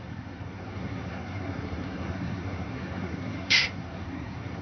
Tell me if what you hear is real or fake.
fake